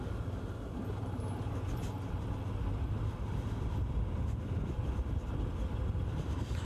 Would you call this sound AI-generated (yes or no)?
no